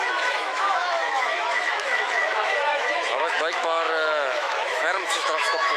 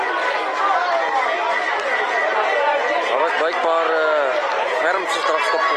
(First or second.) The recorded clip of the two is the second